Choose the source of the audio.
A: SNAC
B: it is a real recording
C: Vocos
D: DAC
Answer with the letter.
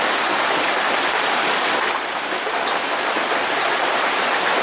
B